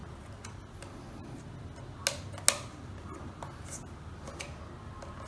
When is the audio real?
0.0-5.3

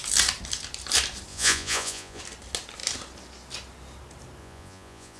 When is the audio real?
0.0-1.3; 2.2-4.4

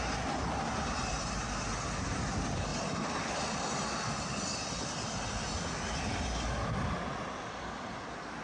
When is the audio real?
0.0-8.4

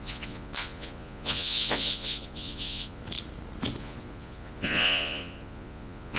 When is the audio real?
3.0-3.8

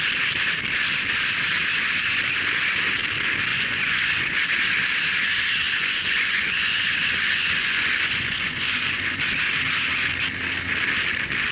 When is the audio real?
0.0-3.5; 4.4-5.8; 9.2-11.5

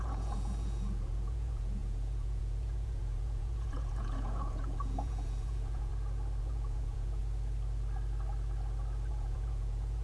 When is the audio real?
5.9-6.4; 7.2-9.1